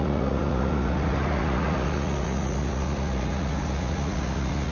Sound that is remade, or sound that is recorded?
remade